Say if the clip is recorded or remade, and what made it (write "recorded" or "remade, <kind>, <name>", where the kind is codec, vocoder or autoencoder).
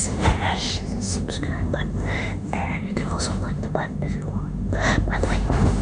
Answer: remade, autoencoder, DAC-VAE